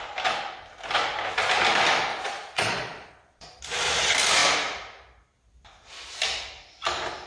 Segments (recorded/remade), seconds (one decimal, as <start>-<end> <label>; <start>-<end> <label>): 0.0-2.1 recorded; 2.1-3.6 remade; 3.6-7.3 recorded